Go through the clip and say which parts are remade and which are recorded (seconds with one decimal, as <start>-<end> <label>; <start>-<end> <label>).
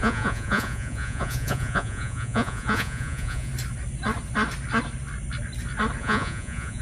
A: 0.0-3.5 remade; 3.5-6.0 recorded; 6.0-6.8 remade